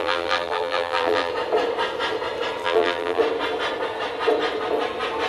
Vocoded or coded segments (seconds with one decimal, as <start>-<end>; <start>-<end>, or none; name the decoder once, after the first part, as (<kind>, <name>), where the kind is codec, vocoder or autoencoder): 0.0-1.3 (vocoder, BigVGAN v2); 2.6-3.2